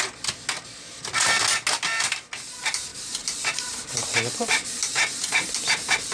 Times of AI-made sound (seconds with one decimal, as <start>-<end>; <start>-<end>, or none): 2.9-5.3